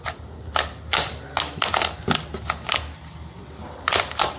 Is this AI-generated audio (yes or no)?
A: no